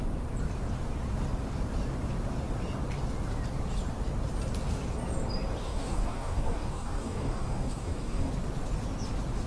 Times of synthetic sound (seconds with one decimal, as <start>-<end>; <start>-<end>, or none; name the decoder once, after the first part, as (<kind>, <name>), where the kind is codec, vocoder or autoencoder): 5.6-8.3 (codec, DAC)